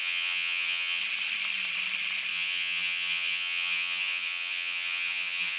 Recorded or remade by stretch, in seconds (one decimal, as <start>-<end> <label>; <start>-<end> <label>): 0.0-1.0 remade; 1.0-2.3 recorded; 2.3-5.6 remade

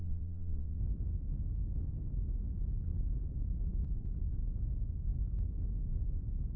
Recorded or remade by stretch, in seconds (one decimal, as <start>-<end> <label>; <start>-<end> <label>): 0.0-0.8 remade; 0.8-6.6 recorded

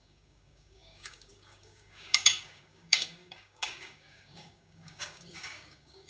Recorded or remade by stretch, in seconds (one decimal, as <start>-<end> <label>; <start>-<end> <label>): 0.0-6.1 remade

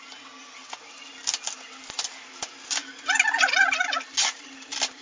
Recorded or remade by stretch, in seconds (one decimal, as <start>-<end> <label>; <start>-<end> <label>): 0.0-5.0 recorded

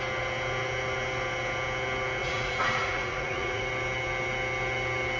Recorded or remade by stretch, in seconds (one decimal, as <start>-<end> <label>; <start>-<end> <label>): 0.0-2.2 recorded; 2.2-3.6 remade; 3.6-5.2 recorded